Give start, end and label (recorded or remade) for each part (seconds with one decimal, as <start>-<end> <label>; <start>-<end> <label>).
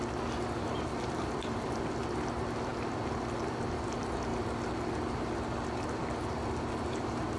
0.0-0.9 recorded; 0.9-2.3 remade; 2.3-7.4 recorded